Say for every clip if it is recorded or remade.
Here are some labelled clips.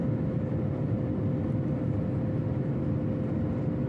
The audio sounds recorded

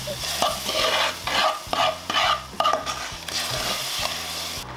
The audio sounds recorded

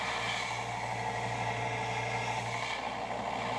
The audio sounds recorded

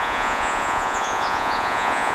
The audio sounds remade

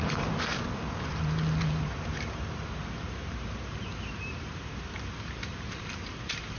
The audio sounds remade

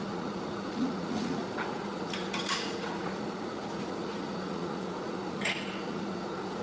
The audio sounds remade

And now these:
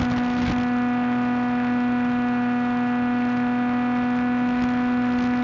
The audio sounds recorded